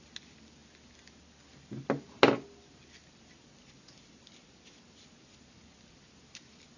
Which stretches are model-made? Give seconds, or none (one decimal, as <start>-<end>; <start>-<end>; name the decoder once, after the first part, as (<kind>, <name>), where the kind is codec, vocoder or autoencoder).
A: none